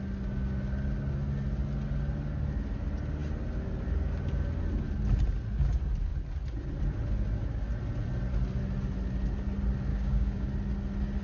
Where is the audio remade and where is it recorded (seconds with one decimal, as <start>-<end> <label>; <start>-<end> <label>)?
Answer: 0.0-9.9 recorded; 9.9-10.5 remade; 10.5-11.2 recorded